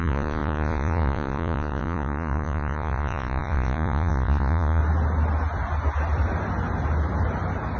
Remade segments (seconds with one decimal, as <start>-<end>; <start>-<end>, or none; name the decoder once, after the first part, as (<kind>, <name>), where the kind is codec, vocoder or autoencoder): 0.0-4.8 (vocoder, Vocos)

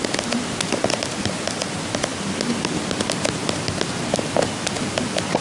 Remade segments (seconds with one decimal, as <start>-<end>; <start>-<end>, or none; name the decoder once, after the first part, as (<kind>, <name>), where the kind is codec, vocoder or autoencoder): none

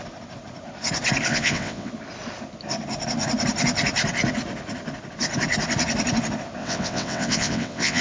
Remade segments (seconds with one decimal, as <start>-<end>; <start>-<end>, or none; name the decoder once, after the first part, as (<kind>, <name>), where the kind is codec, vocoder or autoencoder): 1.3-1.9 (vocoder, WaveNeXt); 6.6-8.0

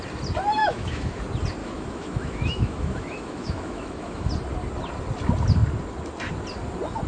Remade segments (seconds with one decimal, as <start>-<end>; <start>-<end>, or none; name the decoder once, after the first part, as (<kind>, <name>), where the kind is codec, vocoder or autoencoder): 0.6-1.2 (autoencoder, DAC-VAE); 1.6-4.3

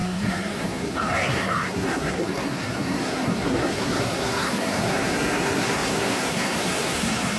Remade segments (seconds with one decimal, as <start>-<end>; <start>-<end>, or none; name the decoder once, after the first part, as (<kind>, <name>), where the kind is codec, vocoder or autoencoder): 0.0-7.4 (codec, SNAC)

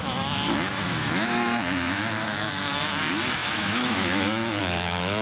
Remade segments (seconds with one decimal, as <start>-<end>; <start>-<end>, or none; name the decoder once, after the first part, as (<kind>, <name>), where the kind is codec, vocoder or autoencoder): 0.0-5.2 (autoencoder, DAC-VAE)

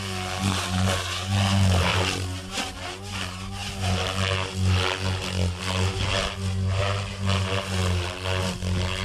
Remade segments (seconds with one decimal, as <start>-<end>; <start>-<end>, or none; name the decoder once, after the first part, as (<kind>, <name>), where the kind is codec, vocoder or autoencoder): none